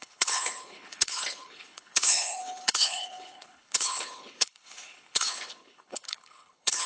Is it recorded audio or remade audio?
remade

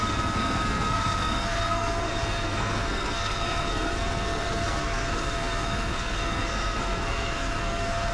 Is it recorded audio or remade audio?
remade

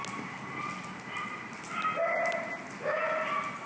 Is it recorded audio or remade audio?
recorded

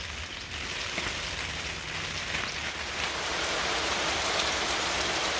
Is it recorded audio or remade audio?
recorded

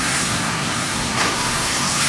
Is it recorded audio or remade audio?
remade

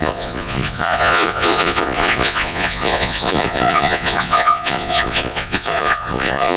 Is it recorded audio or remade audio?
remade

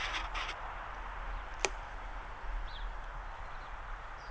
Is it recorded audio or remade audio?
recorded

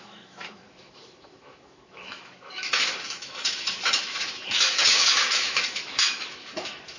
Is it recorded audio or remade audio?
remade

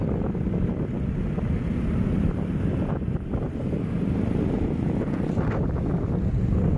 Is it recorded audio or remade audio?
recorded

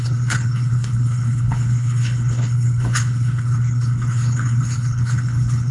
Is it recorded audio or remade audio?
remade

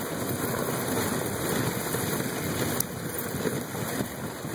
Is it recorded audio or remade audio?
recorded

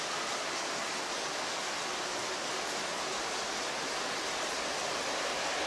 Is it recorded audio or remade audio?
recorded